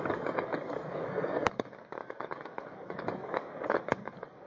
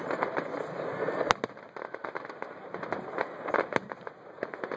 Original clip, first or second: second